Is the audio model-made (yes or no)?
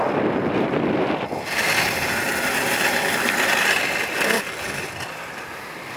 no